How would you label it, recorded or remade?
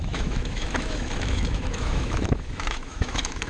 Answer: remade